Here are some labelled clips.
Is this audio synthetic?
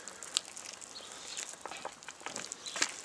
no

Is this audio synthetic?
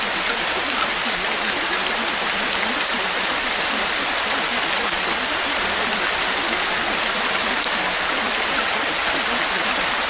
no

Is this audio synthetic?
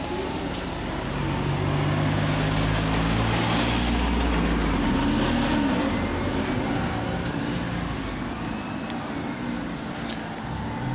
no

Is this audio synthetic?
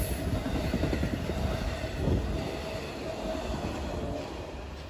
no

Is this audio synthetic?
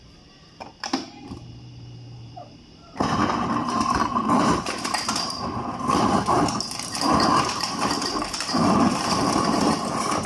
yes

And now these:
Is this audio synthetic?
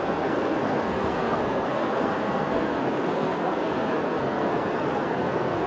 yes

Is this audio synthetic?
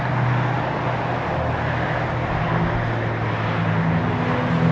no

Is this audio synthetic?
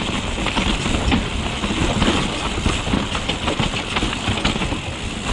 no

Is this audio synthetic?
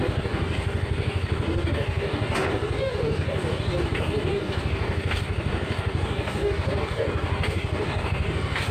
yes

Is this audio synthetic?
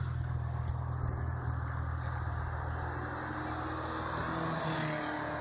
no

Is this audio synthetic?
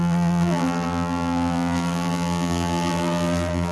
yes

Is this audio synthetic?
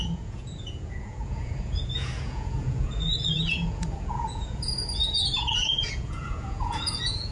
yes